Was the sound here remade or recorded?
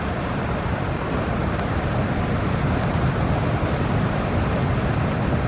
recorded